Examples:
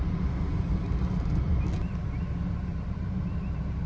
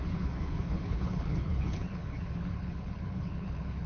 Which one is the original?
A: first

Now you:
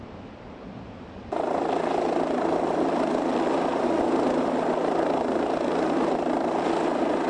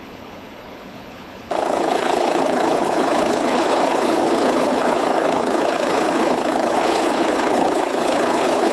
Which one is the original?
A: first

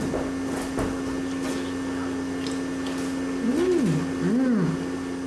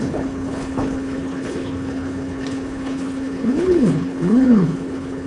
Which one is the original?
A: first